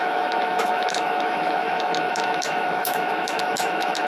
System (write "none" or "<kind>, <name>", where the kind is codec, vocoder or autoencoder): autoencoder, DAC-VAE